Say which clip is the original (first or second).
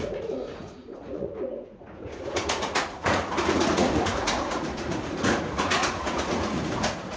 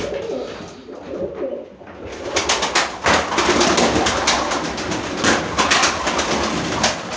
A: second